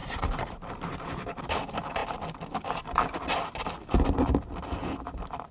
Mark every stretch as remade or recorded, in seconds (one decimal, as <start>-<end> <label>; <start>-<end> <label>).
0.0-1.4 remade; 1.4-5.5 recorded